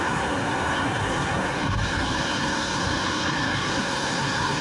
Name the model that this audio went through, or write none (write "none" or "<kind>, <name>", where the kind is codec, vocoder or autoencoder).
codec, SNAC